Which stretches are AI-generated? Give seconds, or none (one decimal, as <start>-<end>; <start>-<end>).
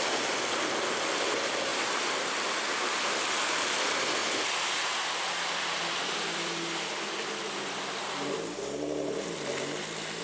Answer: none